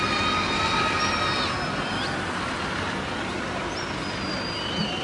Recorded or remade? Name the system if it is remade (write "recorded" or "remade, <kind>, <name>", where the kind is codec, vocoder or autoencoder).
recorded